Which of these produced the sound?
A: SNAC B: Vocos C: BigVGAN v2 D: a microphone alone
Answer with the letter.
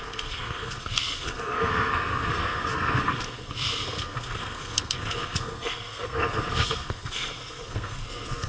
A